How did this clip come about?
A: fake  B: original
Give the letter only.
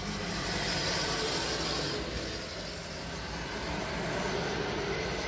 B